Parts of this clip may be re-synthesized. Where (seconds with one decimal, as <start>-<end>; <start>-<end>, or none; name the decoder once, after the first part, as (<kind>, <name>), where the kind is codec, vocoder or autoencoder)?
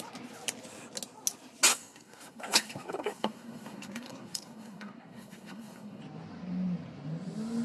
1.7-6.0 (codec, SNAC)